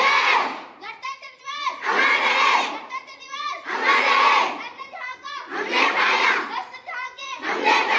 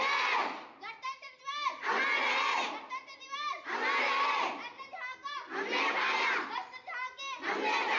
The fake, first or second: first